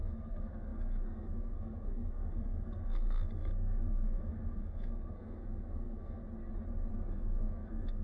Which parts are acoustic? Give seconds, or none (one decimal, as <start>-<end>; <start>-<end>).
6.2-6.9